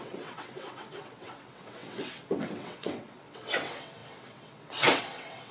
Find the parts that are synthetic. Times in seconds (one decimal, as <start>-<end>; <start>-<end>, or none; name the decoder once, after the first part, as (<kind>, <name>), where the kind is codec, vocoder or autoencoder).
0.0-5.5 (vocoder, WaveNeXt)